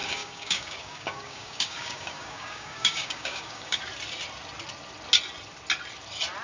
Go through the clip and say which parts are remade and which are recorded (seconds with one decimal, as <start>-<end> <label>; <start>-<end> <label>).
0.0-3.8 remade; 3.8-6.4 recorded

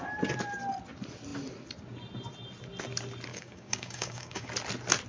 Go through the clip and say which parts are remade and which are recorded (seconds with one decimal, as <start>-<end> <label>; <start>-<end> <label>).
0.0-3.3 recorded; 3.3-4.5 remade; 4.5-5.1 recorded

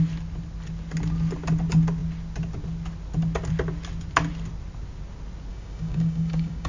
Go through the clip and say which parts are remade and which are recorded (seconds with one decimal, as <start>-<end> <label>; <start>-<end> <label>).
0.0-5.5 recorded; 5.5-6.7 remade

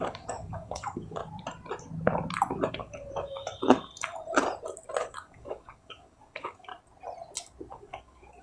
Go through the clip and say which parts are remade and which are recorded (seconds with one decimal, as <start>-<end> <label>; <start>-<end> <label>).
0.0-1.2 remade; 1.2-2.7 recorded; 2.7-3.5 remade; 3.5-5.0 recorded; 5.0-6.7 remade; 6.7-7.7 recorded; 7.7-8.4 remade

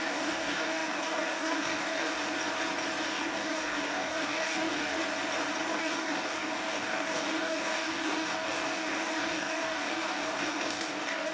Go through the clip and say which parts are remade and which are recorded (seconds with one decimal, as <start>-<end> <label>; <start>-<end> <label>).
0.0-2.2 remade; 2.2-3.0 recorded; 3.0-5.0 remade; 5.0-5.7 recorded; 5.7-11.3 remade

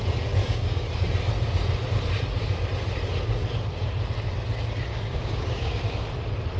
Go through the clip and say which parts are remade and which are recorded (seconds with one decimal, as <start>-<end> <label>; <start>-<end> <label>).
0.0-0.4 recorded; 0.4-0.9 remade; 0.9-4.9 recorded; 4.9-5.8 remade; 5.8-6.6 recorded

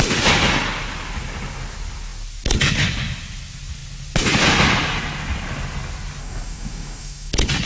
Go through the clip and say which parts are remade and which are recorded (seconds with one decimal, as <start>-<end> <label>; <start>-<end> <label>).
0.0-6.2 recorded; 6.2-7.3 remade; 7.3-7.7 recorded

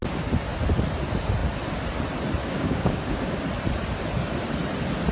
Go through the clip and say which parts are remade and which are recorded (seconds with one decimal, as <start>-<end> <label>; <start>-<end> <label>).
0.0-2.4 recorded; 2.4-3.4 remade; 3.4-5.1 recorded